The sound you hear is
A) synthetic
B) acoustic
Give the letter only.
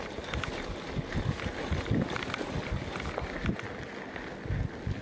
B